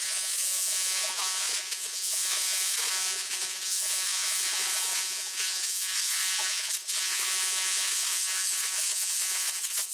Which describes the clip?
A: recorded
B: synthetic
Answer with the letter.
B